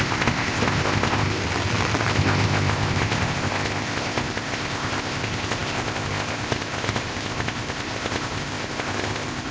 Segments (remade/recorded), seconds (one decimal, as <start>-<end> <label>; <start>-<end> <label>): 0.0-1.4 remade; 1.4-2.1 recorded; 2.1-9.5 remade